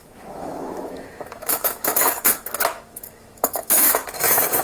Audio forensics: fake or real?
fake